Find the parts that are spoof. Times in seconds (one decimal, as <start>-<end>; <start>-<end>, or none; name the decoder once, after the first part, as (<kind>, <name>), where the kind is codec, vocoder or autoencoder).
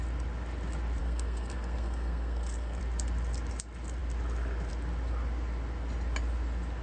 1.0-2.8 (codec, SNAC)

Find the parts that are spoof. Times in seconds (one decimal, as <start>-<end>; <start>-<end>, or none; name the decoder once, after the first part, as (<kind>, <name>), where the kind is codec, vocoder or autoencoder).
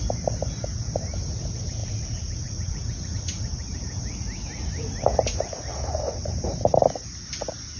1.8-3.1 (vocoder, Vocos)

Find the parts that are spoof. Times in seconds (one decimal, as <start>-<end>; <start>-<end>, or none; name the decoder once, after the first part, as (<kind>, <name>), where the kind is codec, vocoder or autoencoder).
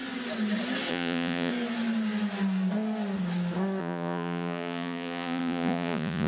0.9-1.5 (vocoder, Vocos); 3.8-6.3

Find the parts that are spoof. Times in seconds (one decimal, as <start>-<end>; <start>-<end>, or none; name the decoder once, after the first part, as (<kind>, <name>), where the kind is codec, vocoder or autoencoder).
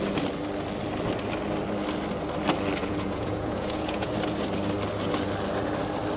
2.8-4.1 (vocoder, Vocos)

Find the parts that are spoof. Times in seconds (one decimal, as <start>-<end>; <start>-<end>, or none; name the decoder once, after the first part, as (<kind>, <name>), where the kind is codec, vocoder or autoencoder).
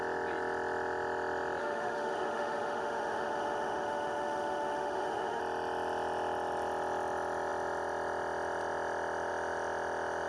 1.6-5.4 (autoencoder, DAC-VAE)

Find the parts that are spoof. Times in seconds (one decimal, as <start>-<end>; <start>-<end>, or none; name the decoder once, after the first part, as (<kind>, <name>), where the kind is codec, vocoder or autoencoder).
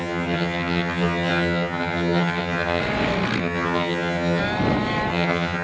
0.0-2.8 (vocoder, HiFi-GAN); 3.4-4.4; 5.1-5.6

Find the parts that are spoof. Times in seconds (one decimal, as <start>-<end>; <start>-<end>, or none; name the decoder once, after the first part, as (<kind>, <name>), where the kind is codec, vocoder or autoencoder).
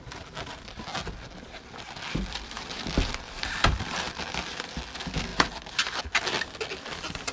1.0-4.7 (vocoder, BigVGAN v2); 5.3-6.0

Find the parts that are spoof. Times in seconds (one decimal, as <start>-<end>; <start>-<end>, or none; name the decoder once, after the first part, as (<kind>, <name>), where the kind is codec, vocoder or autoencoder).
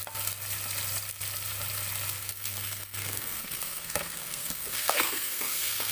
2.2-5.9 (codec, SNAC)